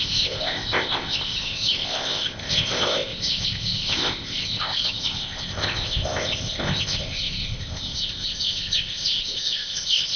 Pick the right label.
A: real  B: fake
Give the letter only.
B